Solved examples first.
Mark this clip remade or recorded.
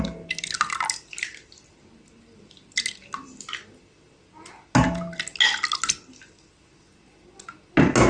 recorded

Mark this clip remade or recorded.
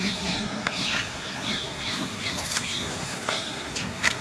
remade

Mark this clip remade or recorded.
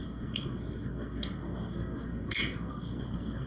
remade